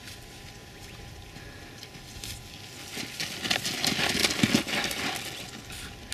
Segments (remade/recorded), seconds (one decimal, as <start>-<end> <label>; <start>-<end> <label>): 0.0-6.1 recorded